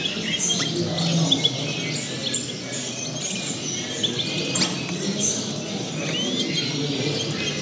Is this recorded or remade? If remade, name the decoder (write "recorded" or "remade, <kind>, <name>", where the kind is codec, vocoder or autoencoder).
recorded